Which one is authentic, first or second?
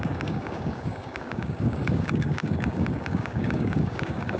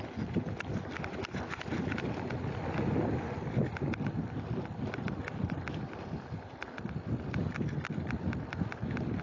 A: second